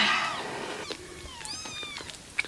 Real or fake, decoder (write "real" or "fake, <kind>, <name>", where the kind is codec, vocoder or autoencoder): real